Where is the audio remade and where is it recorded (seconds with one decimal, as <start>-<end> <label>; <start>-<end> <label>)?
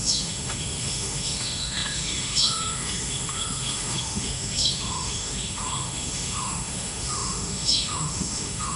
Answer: 0.0-8.8 remade